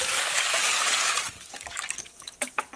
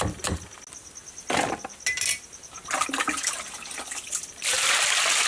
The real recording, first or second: second